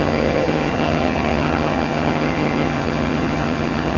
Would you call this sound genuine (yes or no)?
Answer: no